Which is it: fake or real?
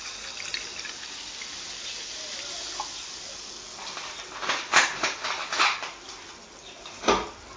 real